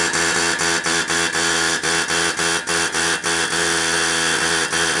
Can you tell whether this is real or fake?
real